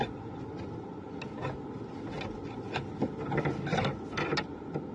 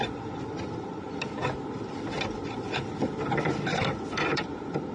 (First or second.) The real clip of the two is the first